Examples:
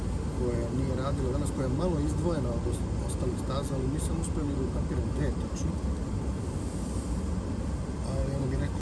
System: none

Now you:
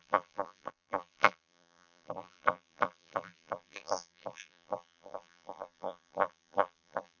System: vocoder, BigVGAN v2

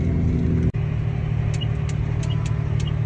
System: none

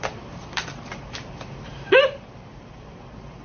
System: vocoder, BigVGAN v2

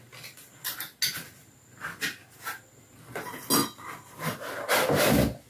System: none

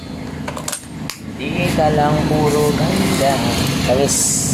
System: none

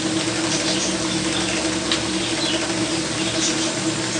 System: none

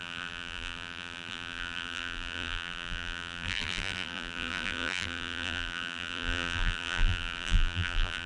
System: vocoder, BigVGAN v2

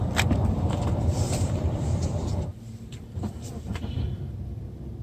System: vocoder, BigVGAN v2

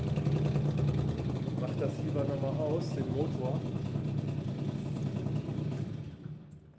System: none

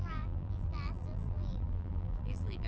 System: vocoder, BigVGAN v2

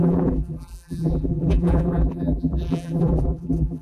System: vocoder, BigVGAN v2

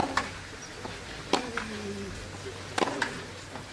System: none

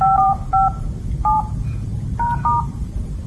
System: vocoder, BigVGAN v2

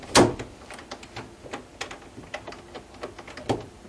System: none